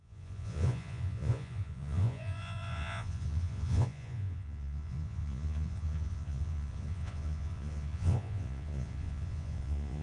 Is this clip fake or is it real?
fake